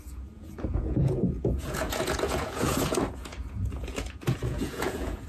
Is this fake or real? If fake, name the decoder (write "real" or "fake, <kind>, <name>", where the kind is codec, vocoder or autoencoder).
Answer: fake, vocoder, Vocos